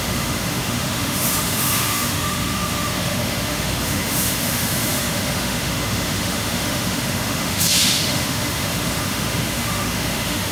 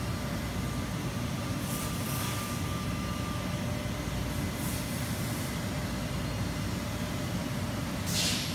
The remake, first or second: first